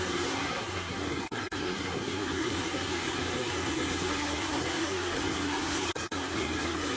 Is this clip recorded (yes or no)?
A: no